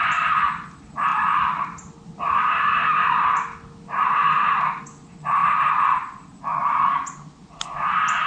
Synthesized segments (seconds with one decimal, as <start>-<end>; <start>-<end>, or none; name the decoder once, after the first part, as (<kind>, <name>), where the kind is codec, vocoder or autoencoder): none